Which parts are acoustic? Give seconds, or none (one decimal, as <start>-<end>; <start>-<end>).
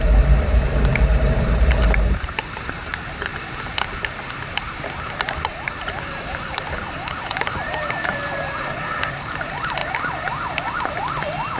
3.3-5.6; 9.8-11.6